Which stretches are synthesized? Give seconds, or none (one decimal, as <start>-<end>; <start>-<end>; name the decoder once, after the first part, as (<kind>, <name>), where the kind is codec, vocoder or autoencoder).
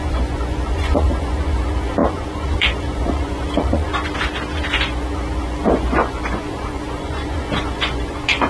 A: 0.0-3.9 (vocoder, Vocos); 4.7-8.5